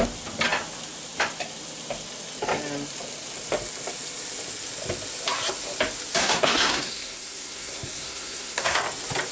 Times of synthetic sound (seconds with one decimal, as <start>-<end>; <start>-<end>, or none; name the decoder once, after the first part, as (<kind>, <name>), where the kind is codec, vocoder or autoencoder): 6.2-8.8 (codec, SNAC)